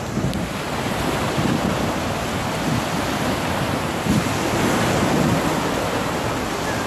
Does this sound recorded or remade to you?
recorded